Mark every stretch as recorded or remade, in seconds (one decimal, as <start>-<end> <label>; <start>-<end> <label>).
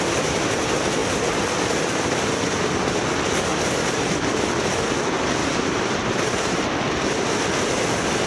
0.0-3.5 recorded; 3.5-4.1 remade; 4.1-5.4 recorded; 5.4-6.6 remade; 6.6-8.3 recorded